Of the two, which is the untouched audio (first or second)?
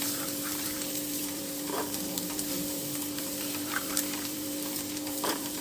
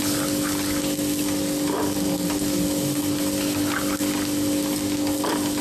second